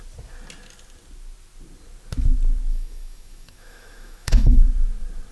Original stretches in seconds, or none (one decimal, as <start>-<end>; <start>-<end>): 0.0-2.7; 4.6-5.3